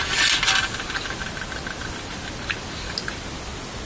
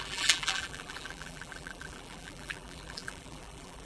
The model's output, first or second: second